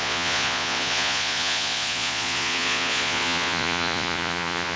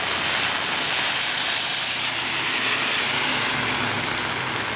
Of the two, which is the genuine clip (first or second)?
second